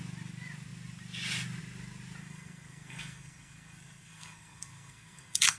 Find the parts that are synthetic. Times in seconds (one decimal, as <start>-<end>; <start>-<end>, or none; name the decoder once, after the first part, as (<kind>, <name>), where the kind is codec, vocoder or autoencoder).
2.2-5.6 (codec, SNAC)